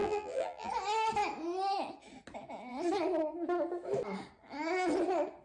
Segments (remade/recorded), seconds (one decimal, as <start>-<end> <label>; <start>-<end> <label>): 0.0-0.7 remade; 0.7-5.4 recorded